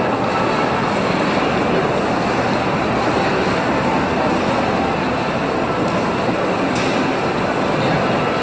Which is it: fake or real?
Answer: real